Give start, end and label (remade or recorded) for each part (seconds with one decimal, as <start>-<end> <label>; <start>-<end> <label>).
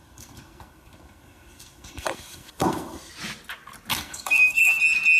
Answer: 0.0-3.1 remade; 3.1-3.9 recorded; 3.9-4.8 remade; 4.8-5.2 recorded